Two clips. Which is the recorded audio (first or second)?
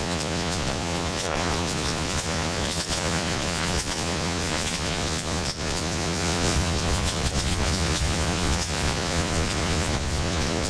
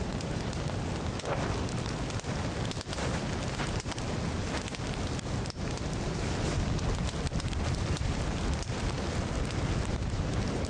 second